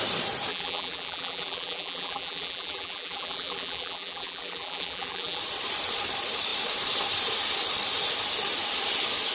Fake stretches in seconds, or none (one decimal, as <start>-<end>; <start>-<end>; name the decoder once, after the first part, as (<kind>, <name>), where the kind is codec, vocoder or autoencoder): 0.5-5.4 (vocoder, BigVGAN v2)